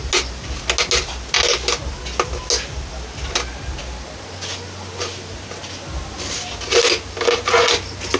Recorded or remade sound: recorded